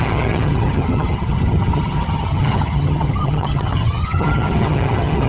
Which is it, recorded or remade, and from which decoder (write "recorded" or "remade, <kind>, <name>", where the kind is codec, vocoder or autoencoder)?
remade, vocoder, HiFi-GAN